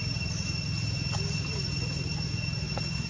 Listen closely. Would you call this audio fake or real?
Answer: real